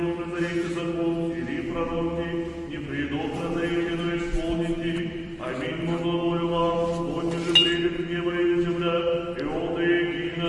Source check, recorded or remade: recorded